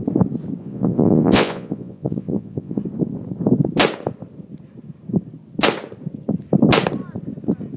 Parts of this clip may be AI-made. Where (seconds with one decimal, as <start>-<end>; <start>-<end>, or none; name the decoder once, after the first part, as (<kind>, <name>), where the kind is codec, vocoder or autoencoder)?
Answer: 0.6-2.8 (vocoder, Vocos)